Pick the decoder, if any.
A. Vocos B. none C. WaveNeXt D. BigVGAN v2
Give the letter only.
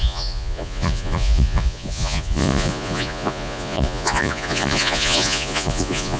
A